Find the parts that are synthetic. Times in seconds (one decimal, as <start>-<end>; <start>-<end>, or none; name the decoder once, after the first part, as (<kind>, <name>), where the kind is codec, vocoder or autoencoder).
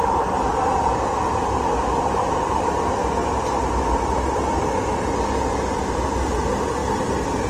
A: none